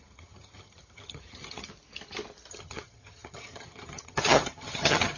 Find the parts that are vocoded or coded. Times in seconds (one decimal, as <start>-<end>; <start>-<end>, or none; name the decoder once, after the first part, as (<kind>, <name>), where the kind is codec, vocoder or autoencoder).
0.0-1.7 (vocoder, HiFi-GAN); 2.5-5.2